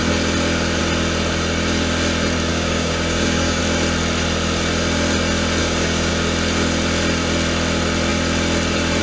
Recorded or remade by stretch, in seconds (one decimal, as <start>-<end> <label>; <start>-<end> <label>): 0.0-2.5 recorded; 2.5-3.6 remade; 3.6-5.6 recorded; 5.6-6.1 remade; 6.1-9.0 recorded